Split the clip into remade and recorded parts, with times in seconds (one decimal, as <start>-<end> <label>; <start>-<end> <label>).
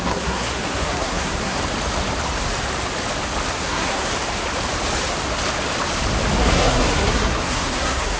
0.0-1.6 remade; 1.6-3.5 recorded; 3.5-4.1 remade; 4.1-6.4 recorded; 6.4-8.2 remade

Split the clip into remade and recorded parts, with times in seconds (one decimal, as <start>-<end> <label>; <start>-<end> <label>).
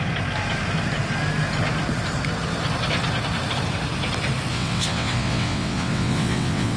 0.0-4.5 recorded; 4.5-6.8 remade